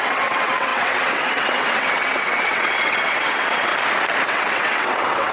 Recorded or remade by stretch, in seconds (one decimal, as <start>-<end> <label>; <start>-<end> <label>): 0.0-3.7 remade; 3.7-4.3 recorded; 4.3-5.3 remade